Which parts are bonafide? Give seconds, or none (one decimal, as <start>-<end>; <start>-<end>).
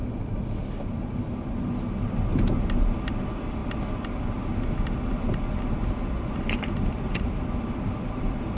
0.0-5.8